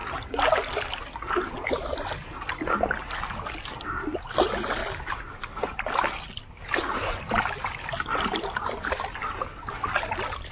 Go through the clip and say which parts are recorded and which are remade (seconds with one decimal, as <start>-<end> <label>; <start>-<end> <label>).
0.0-10.5 recorded